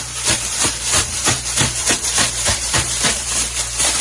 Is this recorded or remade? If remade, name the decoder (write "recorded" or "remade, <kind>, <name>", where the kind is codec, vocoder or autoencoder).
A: remade, vocoder, BigVGAN v2